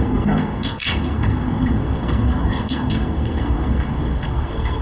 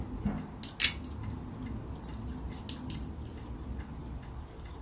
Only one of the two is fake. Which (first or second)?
first